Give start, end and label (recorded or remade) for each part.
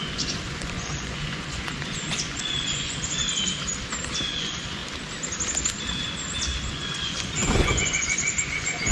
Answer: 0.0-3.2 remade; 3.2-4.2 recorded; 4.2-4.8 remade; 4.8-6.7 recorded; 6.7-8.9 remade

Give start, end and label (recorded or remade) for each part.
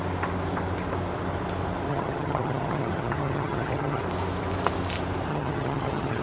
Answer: 0.0-1.9 recorded; 1.9-4.0 remade; 4.0-5.3 recorded; 5.3-6.2 remade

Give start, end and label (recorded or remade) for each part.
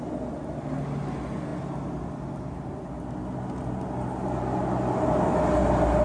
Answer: 0.0-6.0 recorded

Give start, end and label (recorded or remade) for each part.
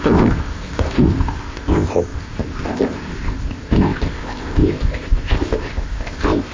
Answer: 0.0-6.5 remade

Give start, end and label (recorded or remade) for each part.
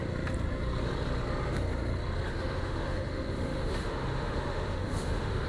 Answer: 0.0-2.3 recorded; 2.3-5.5 remade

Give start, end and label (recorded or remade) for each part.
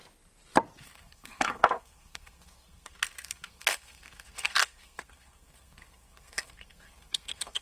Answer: 0.0-0.8 recorded; 0.8-7.6 remade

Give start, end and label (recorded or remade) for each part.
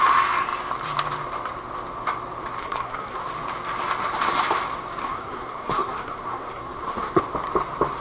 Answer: 0.0-2.6 recorded; 2.6-3.2 remade; 3.2-5.0 recorded; 5.0-7.2 remade; 7.2-8.0 recorded